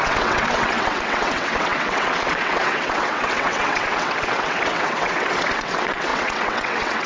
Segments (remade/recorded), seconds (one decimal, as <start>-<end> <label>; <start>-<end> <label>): 0.0-7.1 remade